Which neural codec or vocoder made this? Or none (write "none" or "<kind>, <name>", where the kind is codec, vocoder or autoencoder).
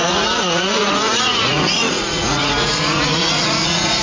vocoder, Vocos